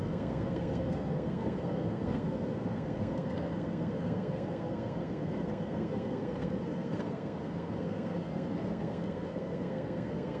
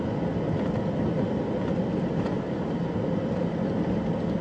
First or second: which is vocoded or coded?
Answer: first